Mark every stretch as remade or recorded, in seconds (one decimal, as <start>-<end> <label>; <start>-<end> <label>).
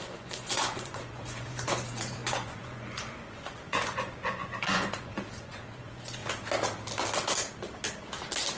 0.0-6.2 remade; 6.2-8.6 recorded